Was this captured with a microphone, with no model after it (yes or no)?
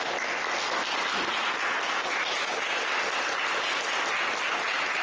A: yes